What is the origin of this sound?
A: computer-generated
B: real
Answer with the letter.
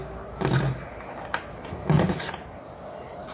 B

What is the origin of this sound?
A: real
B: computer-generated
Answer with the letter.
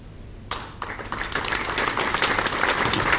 A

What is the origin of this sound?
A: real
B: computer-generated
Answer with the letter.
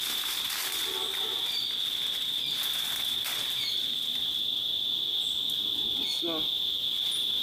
A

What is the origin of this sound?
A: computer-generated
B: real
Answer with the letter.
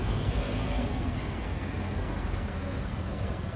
A